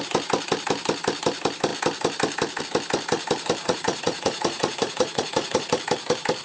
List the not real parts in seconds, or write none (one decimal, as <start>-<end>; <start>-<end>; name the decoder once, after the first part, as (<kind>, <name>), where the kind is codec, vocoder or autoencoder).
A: 3.6-5.7 (vocoder, Vocos)